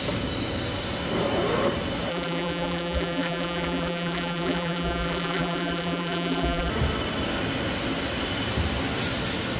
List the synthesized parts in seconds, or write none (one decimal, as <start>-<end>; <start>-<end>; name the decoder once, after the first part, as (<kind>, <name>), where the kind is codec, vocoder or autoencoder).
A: 2.1-6.7 (vocoder, BigVGAN v2)